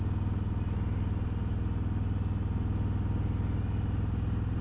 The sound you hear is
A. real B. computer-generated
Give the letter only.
A